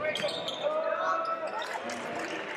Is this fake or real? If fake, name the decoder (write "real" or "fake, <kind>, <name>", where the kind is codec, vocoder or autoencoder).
real